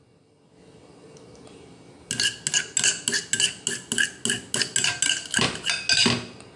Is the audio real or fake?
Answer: real